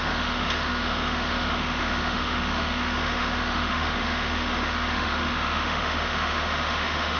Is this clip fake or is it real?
fake